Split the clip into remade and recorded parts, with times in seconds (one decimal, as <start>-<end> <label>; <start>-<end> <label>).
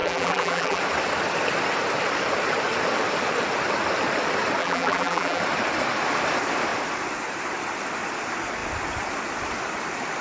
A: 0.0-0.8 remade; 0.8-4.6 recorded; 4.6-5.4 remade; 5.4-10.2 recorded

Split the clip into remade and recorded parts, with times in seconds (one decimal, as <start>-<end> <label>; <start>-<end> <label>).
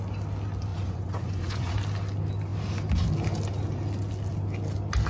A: 0.0-0.7 recorded; 0.7-1.7 remade; 1.7-5.1 recorded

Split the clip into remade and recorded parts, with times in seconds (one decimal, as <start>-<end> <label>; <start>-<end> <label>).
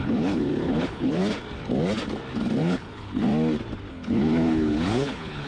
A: 0.0-1.2 remade; 1.2-2.6 recorded; 2.6-3.3 remade; 3.3-3.9 recorded; 3.9-5.5 remade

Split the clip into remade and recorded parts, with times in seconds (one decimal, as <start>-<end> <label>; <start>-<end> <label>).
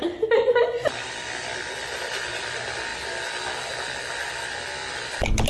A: 0.0-2.9 remade; 2.9-4.3 recorded; 4.3-5.5 remade